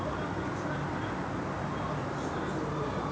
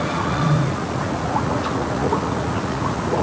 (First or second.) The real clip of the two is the first